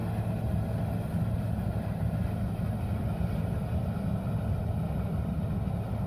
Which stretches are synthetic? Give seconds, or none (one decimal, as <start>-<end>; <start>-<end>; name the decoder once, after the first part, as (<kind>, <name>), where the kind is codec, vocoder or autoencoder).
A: none